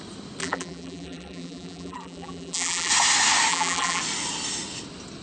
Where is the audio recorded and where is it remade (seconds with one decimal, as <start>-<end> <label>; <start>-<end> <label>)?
0.0-0.4 recorded; 0.4-2.9 remade; 2.9-3.5 recorded; 3.5-4.0 remade; 4.0-5.2 recorded